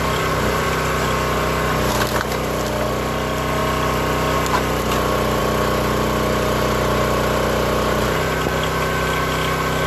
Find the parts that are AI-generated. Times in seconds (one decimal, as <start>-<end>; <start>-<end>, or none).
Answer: none